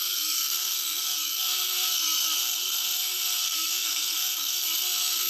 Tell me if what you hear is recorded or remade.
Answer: remade